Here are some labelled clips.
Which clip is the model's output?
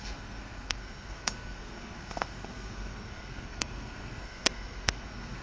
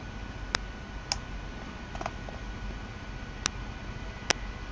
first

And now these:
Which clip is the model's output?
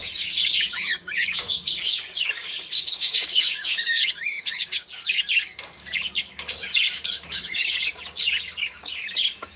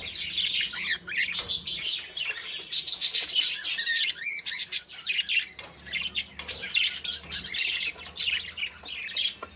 first